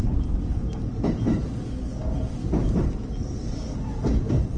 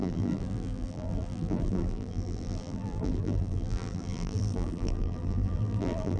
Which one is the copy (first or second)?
second